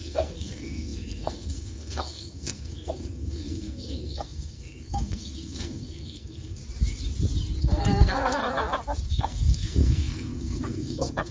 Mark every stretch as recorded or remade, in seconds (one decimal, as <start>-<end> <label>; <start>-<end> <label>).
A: 0.0-6.6 remade; 6.6-7.6 recorded; 7.6-8.4 remade; 8.4-9.1 recorded; 9.1-11.3 remade